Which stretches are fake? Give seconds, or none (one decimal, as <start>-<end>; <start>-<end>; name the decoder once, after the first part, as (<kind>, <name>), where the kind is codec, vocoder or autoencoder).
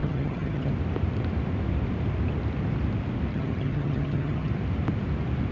0.0-0.7 (vocoder, HiFi-GAN); 3.3-4.5